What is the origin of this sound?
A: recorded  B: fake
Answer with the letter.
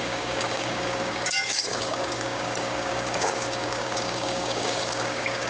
B